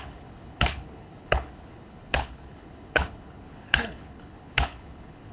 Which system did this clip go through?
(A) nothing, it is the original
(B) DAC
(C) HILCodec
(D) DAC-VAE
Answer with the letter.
C